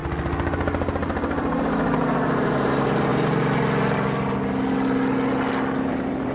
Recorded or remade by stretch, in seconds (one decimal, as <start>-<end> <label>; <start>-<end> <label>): 0.0-1.6 recorded; 1.6-3.1 remade; 3.1-5.8 recorded; 5.8-6.3 remade